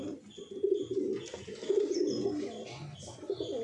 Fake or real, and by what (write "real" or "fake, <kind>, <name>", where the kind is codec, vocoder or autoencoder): real